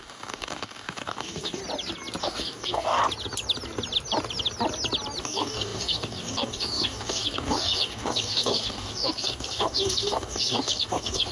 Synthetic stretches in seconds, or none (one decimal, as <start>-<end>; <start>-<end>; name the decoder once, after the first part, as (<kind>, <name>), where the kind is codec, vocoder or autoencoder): 0.0-1.6 (codec, DAC); 2.2-3.0; 5.2-11.3